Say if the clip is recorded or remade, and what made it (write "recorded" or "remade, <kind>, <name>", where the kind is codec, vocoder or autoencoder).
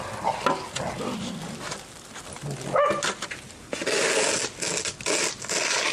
recorded